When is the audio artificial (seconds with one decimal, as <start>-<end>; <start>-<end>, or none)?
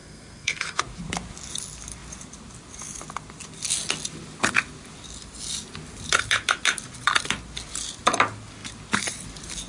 0.0-0.8